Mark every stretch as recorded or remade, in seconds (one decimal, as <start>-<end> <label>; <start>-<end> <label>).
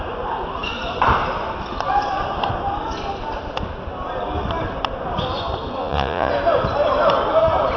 0.0-5.8 recorded; 5.8-6.3 remade; 6.3-7.8 recorded